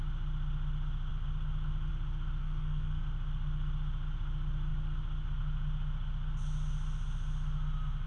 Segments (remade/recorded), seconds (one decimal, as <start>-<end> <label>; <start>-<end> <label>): 0.0-2.4 recorded; 2.4-3.0 remade; 3.0-8.1 recorded